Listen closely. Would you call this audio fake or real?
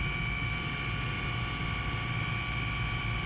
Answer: real